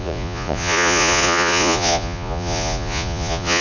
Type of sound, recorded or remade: remade